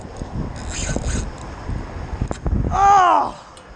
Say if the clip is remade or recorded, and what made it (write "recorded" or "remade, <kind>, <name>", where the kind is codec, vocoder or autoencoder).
recorded